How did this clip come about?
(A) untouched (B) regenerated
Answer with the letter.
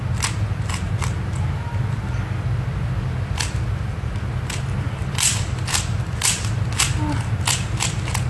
A